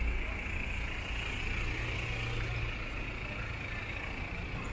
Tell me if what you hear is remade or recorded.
recorded